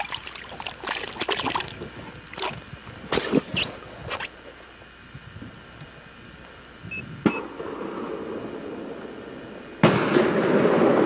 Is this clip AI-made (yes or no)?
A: no